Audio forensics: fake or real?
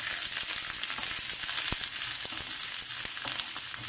real